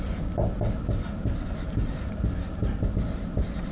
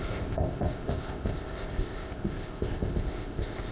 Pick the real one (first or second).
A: first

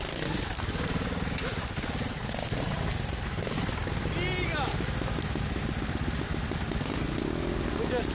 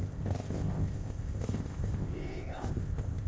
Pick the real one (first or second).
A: first